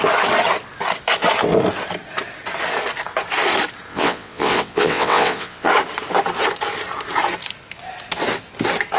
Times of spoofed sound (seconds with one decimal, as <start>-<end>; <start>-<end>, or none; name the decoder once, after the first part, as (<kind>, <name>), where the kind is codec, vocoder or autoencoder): 3.9-5.7 (vocoder, WaveNeXt)